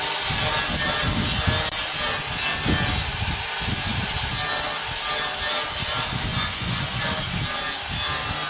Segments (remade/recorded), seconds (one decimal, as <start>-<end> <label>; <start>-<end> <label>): 0.0-6.3 recorded; 6.3-7.0 remade; 7.0-8.5 recorded